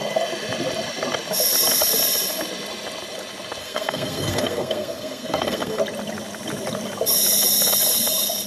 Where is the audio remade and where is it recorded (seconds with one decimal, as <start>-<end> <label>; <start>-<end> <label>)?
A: 0.0-3.6 recorded; 3.6-5.8 remade; 5.8-8.5 recorded